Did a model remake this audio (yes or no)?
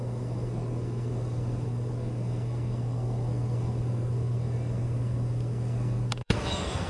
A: yes